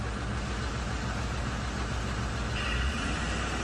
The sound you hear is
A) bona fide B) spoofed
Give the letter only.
A